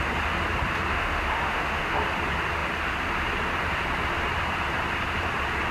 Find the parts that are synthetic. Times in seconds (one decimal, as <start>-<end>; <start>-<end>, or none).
0.9-1.9